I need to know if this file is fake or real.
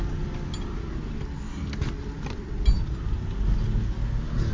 real